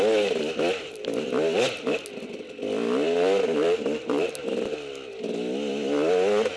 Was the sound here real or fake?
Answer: real